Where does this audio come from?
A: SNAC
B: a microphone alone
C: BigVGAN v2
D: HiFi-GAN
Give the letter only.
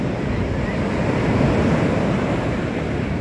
B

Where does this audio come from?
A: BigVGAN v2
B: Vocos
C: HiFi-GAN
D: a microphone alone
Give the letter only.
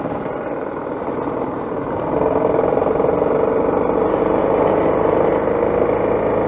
D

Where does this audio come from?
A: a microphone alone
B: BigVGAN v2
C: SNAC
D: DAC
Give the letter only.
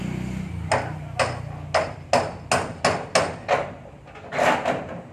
A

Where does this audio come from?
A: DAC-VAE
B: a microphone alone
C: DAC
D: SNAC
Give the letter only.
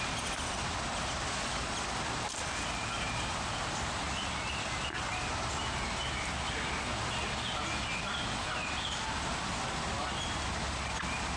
B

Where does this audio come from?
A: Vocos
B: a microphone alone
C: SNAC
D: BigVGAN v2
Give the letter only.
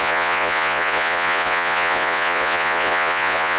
A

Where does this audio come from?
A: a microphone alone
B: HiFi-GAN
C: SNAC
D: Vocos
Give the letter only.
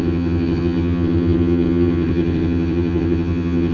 B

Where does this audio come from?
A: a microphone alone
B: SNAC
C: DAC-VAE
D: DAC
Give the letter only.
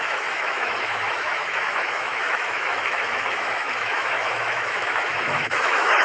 C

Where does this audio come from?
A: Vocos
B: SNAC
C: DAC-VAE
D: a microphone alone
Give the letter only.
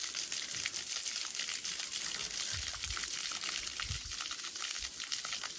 D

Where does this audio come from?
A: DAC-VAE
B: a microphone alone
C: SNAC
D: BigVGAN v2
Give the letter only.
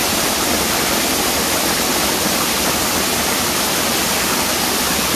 B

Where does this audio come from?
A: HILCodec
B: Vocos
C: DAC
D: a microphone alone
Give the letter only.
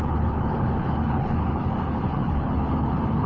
A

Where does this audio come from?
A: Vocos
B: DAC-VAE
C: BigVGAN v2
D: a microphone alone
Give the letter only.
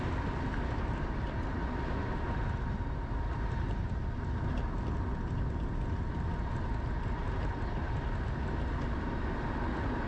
D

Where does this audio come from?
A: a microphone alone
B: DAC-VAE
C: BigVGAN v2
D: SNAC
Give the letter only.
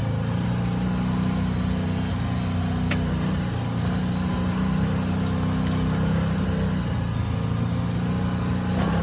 A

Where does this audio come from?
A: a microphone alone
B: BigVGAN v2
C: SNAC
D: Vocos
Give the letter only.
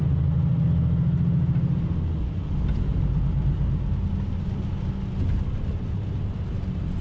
A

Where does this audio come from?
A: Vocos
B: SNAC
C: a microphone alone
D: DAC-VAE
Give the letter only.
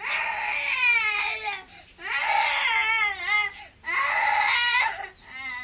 C